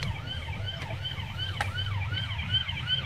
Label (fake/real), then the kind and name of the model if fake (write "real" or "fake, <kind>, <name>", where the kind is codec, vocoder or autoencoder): real